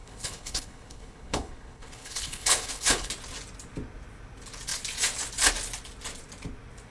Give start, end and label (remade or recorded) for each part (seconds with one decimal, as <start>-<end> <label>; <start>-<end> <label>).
0.0-3.1 remade; 3.1-6.9 recorded